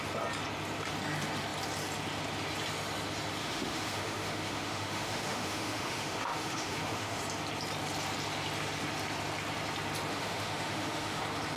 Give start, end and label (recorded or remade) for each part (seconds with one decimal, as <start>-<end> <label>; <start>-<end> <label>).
0.0-3.4 recorded; 3.4-7.2 remade; 7.2-10.1 recorded; 10.1-11.2 remade; 11.2-11.6 recorded